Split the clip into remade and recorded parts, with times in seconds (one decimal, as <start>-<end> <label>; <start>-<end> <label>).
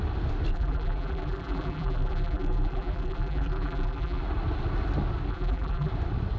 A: 0.0-0.5 recorded; 0.5-4.2 remade; 4.2-5.3 recorded; 5.3-5.9 remade; 5.9-6.4 recorded